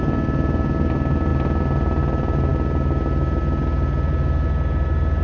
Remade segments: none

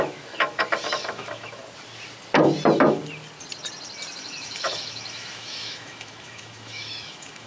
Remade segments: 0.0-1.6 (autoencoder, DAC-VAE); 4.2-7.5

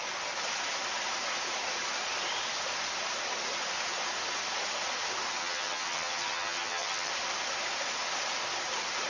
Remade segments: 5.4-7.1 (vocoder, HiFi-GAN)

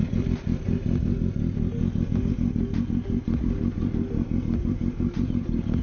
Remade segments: none

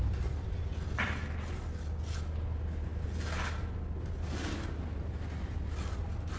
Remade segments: none